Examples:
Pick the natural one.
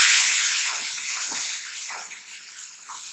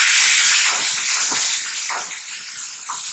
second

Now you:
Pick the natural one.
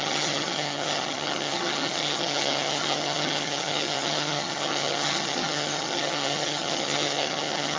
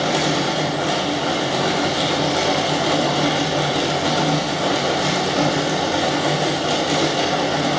second